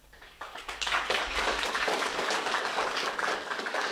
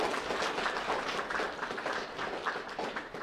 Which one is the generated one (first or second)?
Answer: first